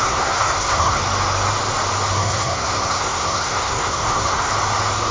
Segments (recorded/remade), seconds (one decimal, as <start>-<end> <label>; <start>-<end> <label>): 0.0-1.0 remade; 1.0-2.1 recorded; 2.1-4.5 remade; 4.5-5.1 recorded